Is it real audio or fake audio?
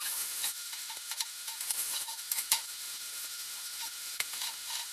fake